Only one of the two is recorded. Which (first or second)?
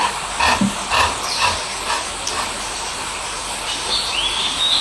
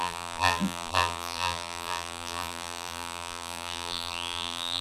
first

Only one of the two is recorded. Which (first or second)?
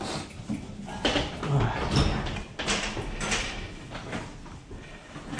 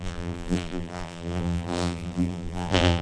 first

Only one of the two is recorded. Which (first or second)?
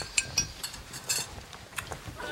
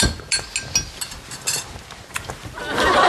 second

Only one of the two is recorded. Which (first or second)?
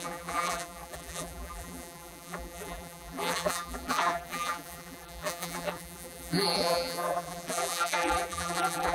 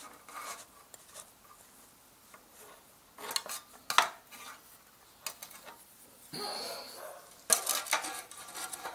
second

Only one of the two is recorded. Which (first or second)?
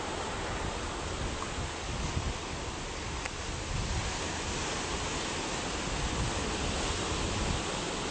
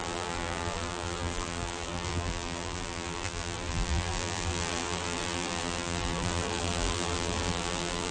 first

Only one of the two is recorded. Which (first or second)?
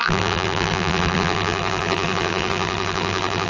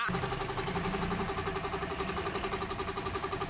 second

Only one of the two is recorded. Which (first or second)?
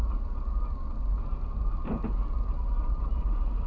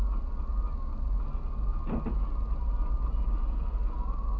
second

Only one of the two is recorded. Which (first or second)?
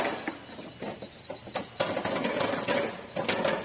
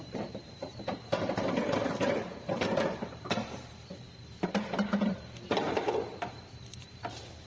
first